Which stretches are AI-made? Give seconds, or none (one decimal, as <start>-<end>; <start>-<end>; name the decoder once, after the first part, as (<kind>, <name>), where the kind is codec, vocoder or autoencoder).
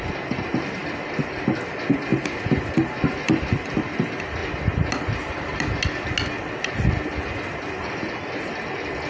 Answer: none